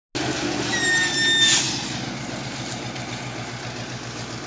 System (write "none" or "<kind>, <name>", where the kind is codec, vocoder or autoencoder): none